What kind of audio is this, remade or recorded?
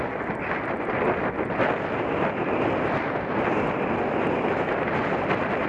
recorded